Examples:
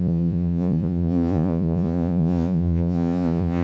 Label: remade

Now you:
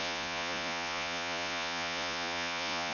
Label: remade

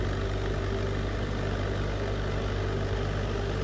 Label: recorded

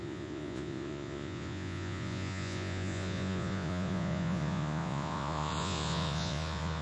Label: remade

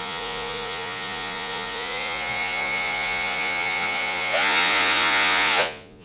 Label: remade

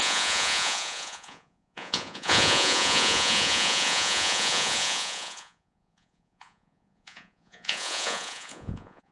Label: remade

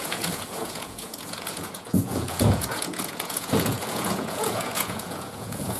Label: remade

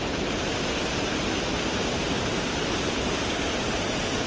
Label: recorded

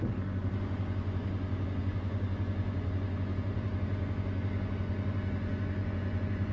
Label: remade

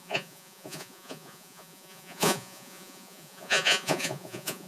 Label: remade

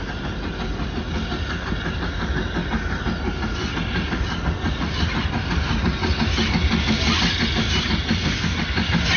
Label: recorded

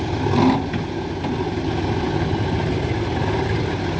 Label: recorded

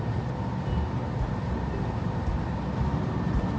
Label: recorded